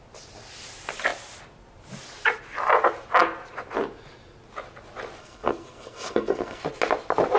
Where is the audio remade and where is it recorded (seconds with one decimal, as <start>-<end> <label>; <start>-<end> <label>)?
0.0-5.2 recorded; 5.2-6.6 remade; 6.6-7.4 recorded